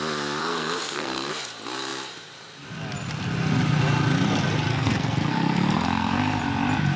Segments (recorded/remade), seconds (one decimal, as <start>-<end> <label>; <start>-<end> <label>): 0.0-0.4 recorded; 0.4-1.3 remade; 1.3-4.7 recorded; 4.7-6.4 remade; 6.4-7.0 recorded